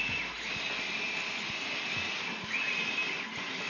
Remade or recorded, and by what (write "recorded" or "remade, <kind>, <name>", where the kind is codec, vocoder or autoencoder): recorded